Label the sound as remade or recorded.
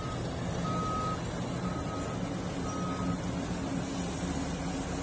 recorded